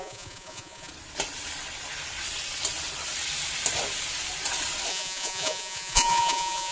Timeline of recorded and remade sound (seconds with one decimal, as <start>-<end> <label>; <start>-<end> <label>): 0.0-0.9 remade; 0.9-4.9 recorded; 4.9-6.7 remade